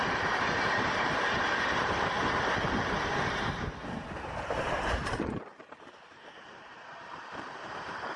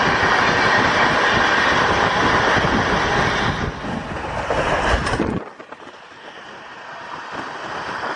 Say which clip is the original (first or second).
second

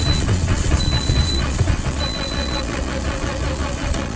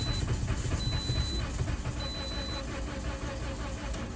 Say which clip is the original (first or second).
second